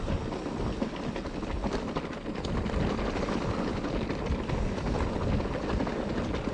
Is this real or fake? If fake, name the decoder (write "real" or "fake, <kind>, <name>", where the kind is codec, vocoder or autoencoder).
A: real